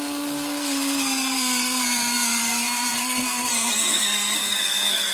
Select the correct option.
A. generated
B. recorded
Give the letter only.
A